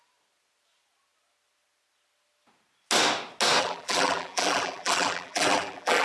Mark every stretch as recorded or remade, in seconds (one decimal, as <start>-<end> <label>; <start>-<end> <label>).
0.0-3.6 recorded; 3.6-6.0 remade